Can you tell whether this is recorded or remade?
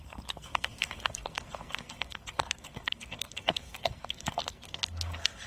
remade